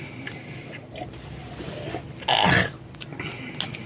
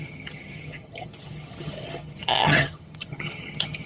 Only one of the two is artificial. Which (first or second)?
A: second